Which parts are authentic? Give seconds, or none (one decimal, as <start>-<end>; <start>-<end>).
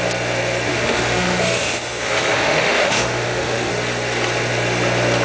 0.0-0.7; 3.7-5.2